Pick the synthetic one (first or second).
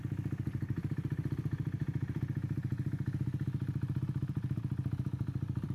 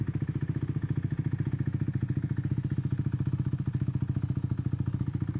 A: first